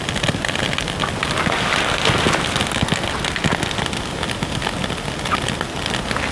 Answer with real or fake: real